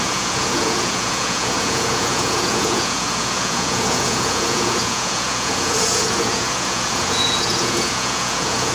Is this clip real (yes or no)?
no